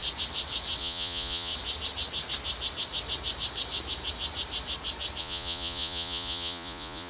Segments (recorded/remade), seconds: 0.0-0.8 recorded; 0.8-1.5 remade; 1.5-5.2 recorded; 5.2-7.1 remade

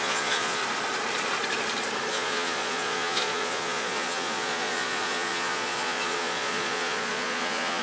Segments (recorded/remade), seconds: 0.0-0.6 remade; 0.6-2.1 recorded; 2.1-7.8 remade

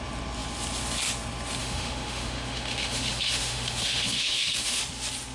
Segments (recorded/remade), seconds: 0.0-1.6 recorded; 1.6-4.8 remade; 4.8-5.3 recorded

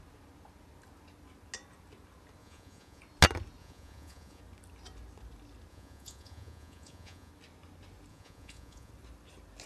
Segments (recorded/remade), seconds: 0.0-2.4 recorded; 2.4-3.0 remade; 3.0-3.6 recorded; 3.6-4.4 remade; 4.4-5.7 recorded; 5.7-7.3 remade; 7.3-8.1 recorded; 8.1-8.9 remade; 8.9-9.7 recorded

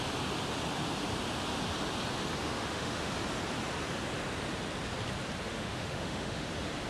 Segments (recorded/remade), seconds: 0.0-2.4 recorded; 2.4-3.1 remade; 3.1-5.5 recorded; 5.5-6.5 remade; 6.5-6.9 recorded

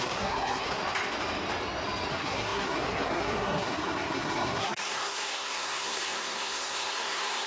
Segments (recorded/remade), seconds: 0.0-0.8 remade; 0.8-2.1 recorded; 2.1-7.5 remade

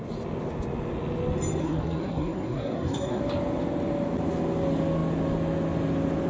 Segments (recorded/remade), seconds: 0.0-1.6 recorded; 1.6-3.2 remade; 3.2-6.3 recorded

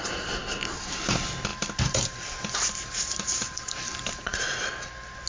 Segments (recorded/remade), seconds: 0.0-1.5 recorded; 1.5-4.7 remade; 4.7-5.3 recorded